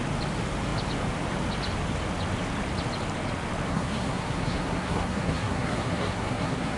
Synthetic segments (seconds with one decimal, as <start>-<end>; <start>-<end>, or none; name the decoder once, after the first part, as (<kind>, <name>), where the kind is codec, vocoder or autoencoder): 3.7-6.8 (codec, SNAC)